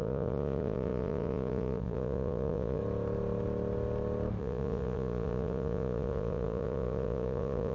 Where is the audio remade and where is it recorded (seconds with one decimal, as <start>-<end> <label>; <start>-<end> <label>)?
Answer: 0.0-2.8 remade; 2.8-4.4 recorded; 4.4-7.7 remade